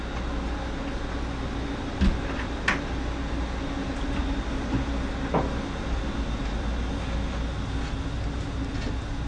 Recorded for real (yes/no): yes